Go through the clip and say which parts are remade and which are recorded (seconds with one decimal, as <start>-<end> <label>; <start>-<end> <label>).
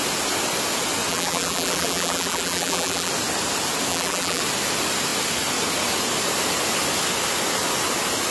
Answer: 0.0-1.1 recorded; 1.1-3.1 remade; 3.1-3.9 recorded; 3.9-4.4 remade; 4.4-8.3 recorded